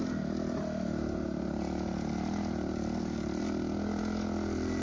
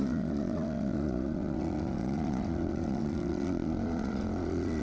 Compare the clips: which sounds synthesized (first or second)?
second